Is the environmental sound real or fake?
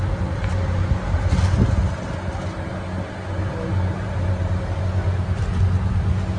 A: real